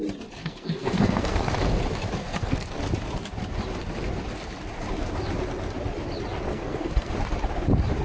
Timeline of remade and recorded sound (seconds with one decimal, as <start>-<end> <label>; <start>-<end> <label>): 0.0-0.4 recorded; 0.4-1.5 remade; 1.5-2.2 recorded; 2.2-2.8 remade; 2.8-6.5 recorded; 6.5-7.1 remade; 7.1-8.0 recorded